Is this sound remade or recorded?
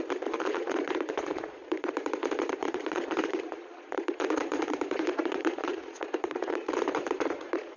remade